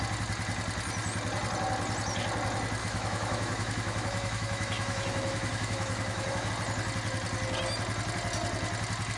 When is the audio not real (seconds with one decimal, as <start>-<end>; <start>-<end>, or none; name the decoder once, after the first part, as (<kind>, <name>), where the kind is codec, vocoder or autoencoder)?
2.8-6.5 (autoencoder, DAC-VAE)